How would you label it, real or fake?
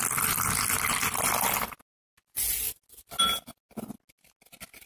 real